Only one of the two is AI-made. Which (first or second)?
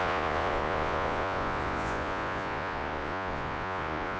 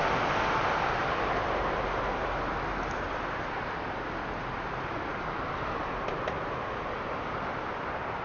first